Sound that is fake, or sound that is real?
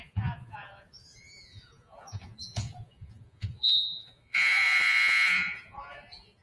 fake